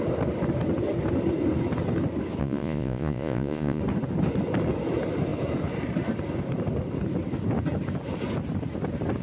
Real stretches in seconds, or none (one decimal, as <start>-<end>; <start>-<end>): 0.0-2.4; 3.8-9.2